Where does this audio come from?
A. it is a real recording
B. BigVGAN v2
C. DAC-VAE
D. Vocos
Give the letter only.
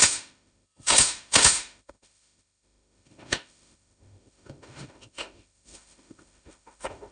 C